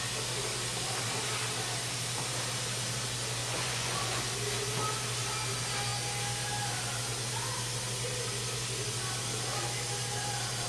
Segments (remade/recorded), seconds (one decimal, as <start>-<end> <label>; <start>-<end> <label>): 0.0-3.4 recorded; 3.4-4.2 remade; 4.2-10.7 recorded